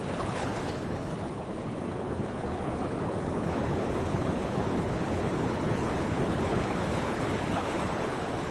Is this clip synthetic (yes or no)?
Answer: yes